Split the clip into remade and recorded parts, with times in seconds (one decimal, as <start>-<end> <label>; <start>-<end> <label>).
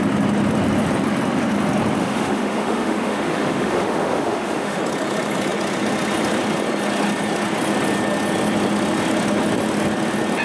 0.0-2.0 recorded; 2.0-4.8 remade; 4.8-10.4 recorded